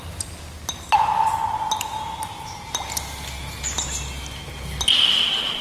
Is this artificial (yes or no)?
no